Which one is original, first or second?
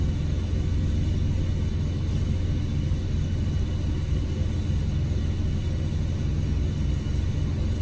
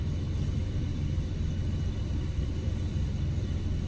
first